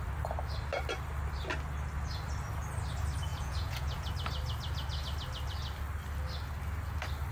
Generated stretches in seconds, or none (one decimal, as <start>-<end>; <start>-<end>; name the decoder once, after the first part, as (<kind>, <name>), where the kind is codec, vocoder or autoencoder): 3.3-4.1 (vocoder, Vocos)